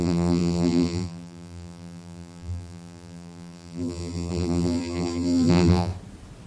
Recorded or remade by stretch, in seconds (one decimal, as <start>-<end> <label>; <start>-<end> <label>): 0.0-5.9 remade; 5.9-6.5 recorded

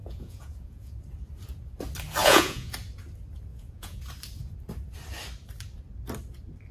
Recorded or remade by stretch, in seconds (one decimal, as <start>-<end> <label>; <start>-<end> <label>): 0.0-1.0 remade; 1.0-2.2 recorded; 2.2-2.7 remade; 2.7-3.5 recorded; 3.5-4.0 remade; 4.0-6.7 recorded